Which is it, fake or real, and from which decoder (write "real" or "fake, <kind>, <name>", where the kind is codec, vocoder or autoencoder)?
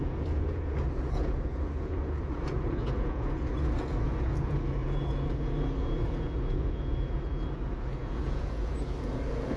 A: fake, vocoder, Vocos